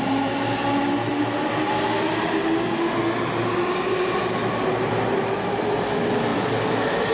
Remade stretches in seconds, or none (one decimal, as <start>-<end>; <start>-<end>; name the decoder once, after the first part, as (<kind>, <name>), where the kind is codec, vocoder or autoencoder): none

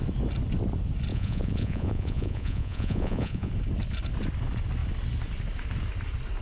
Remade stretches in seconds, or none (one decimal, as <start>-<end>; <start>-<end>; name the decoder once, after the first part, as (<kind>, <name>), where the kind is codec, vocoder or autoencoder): 1.1-3.5 (vocoder, Vocos)

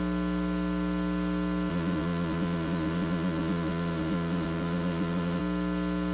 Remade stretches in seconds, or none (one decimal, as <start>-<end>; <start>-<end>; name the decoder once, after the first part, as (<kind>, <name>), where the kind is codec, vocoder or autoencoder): 1.7-5.4 (vocoder, Vocos)

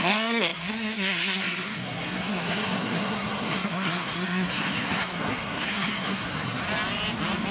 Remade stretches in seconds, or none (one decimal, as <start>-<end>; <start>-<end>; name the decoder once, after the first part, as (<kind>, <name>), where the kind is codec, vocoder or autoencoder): 0.0-6.6 (codec, SNAC)